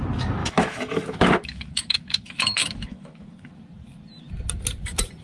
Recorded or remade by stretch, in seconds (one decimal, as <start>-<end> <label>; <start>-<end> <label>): 0.0-0.4 recorded; 0.4-3.5 remade; 3.5-5.2 recorded